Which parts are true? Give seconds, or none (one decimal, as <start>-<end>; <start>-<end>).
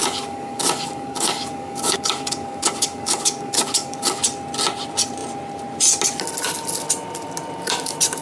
4.2-8.2